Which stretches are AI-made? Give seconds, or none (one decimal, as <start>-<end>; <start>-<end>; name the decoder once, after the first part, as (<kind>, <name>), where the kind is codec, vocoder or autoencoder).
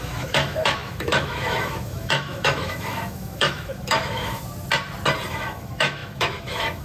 0.0-4.4 (autoencoder, DAC-VAE); 5.3-6.8